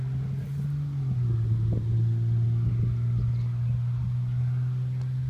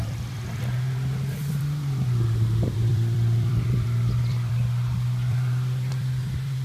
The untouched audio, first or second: first